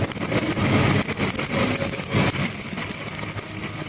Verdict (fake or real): fake